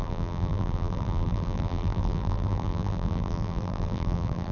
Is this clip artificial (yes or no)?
yes